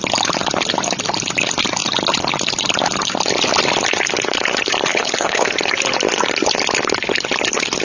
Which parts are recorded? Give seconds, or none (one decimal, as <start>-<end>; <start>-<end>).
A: 0.0-4.9; 5.5-7.8

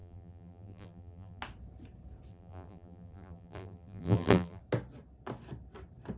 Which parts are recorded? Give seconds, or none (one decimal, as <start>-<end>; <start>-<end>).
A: 1.4-2.3; 4.6-6.2

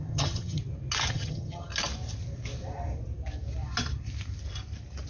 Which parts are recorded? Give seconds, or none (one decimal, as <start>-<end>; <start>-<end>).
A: 0.6-1.1; 1.7-5.1

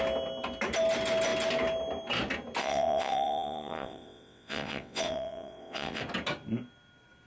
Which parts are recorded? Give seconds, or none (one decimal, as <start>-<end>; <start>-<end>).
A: 0.0-2.6; 6.0-7.3

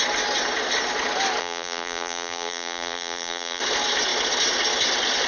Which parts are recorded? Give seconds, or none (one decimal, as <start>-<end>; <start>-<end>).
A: 0.0-1.4; 3.6-5.3

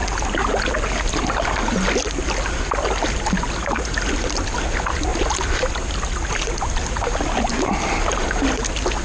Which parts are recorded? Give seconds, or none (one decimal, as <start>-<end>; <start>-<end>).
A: 0.0-9.0